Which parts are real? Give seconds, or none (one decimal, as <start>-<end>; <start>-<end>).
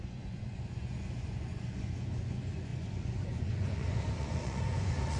none